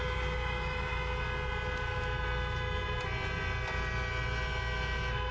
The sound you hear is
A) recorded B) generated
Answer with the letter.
A